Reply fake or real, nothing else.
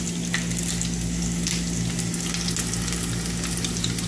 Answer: real